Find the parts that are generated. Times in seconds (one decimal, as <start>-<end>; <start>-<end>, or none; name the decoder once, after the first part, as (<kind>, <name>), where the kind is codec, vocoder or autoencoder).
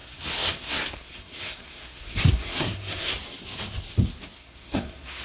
0.0-3.1 (codec, SNAC); 4.4-5.2